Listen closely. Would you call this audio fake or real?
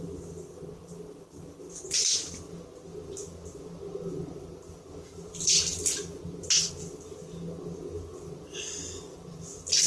real